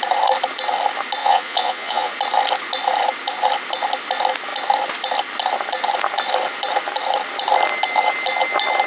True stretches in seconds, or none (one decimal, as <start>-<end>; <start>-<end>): 0.0-1.2; 2.1-8.9